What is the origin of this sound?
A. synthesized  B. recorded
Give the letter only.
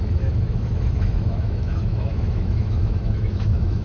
A